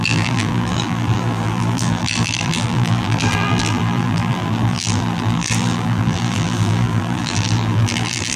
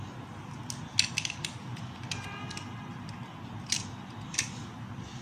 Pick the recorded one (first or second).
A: second